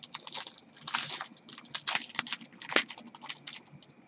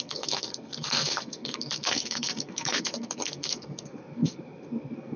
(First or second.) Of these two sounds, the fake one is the second